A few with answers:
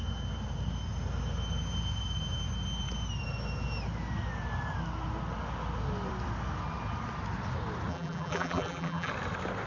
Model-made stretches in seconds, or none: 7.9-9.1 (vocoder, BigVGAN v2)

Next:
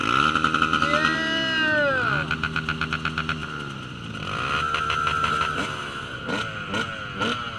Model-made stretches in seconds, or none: none